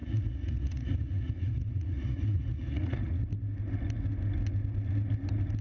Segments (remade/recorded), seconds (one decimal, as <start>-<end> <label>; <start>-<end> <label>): 0.0-3.2 remade; 3.2-5.6 recorded